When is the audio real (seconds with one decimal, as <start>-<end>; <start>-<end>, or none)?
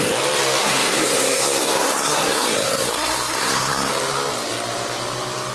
0.0-0.6; 3.9-5.5